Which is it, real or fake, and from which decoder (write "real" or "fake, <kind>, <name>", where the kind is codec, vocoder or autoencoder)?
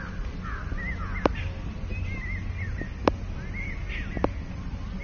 real